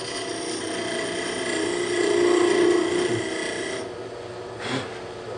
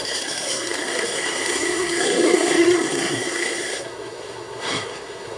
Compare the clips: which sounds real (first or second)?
first